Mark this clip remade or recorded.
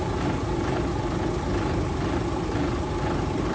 recorded